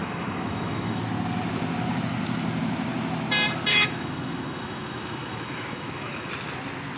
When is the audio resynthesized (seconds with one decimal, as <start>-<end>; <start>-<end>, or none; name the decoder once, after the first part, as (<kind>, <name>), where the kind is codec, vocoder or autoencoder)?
0.0-1.0 (autoencoder, DAC-VAE); 3.7-6.3